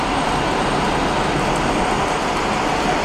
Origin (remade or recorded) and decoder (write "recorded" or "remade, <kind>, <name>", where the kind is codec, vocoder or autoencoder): recorded